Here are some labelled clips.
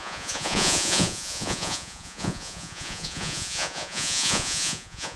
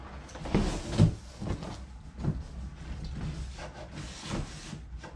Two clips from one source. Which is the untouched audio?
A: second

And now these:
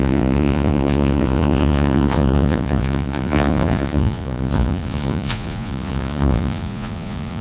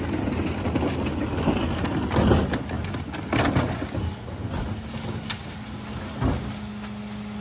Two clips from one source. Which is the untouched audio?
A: second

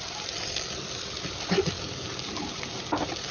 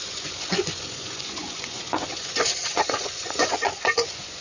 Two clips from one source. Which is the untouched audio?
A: first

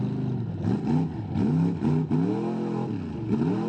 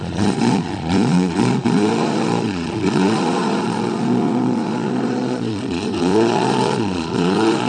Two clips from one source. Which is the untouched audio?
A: first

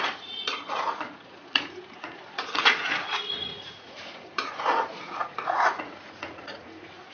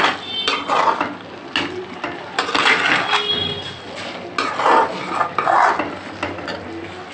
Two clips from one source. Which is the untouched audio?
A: second